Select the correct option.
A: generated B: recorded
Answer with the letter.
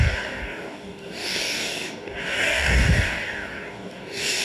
A